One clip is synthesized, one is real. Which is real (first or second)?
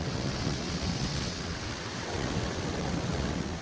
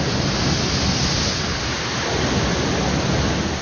second